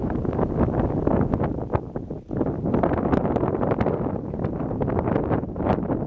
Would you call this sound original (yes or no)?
yes